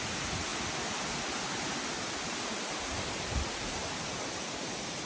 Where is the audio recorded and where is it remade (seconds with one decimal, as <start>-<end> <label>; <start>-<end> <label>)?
0.0-0.5 remade; 0.5-2.1 recorded; 2.1-5.1 remade